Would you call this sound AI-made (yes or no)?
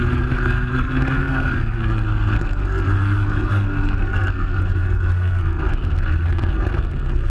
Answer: yes